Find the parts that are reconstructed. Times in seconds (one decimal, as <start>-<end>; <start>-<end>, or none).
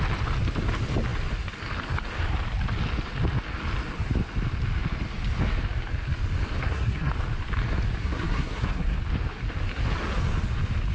6.6-7.1; 8.0-9.0